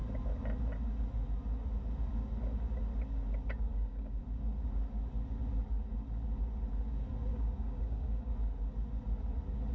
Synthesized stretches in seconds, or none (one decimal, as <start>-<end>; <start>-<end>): 3.7-4.2; 7.3-8.3